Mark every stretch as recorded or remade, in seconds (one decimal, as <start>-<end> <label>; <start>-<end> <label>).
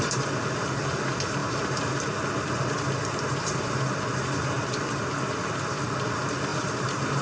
0.0-6.5 recorded; 6.5-7.2 remade